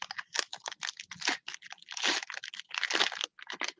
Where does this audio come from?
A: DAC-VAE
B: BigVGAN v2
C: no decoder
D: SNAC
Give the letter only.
C